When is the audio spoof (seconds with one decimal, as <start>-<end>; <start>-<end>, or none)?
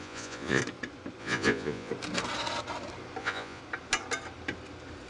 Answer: 0.0-0.6; 1.2-1.9; 3.2-3.6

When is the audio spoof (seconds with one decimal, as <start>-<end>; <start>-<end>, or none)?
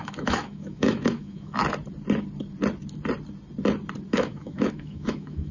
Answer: 0.0-1.6; 4.1-5.5